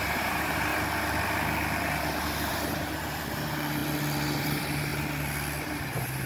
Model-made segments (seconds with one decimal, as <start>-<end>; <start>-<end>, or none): 0.0-0.7; 2.0-3.8; 4.4-4.9; 5.8-6.3